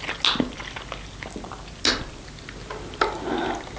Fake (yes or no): no